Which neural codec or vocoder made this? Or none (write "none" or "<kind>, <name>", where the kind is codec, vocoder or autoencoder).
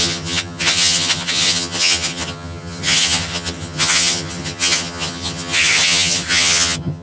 vocoder, HiFi-GAN